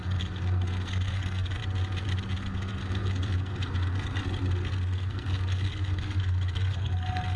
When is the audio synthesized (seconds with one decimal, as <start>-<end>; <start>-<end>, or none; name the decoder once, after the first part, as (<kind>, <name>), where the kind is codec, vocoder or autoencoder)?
0.0-1.6 (codec, SNAC); 2.4-7.4